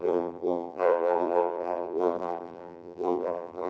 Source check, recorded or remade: remade